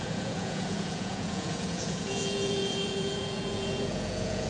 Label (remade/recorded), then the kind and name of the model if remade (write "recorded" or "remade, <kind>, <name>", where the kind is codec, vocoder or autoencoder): remade, vocoder, Vocos